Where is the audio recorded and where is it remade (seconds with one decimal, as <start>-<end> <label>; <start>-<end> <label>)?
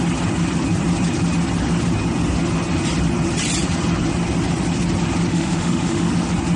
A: 0.0-5.3 recorded; 5.3-6.1 remade; 6.1-6.6 recorded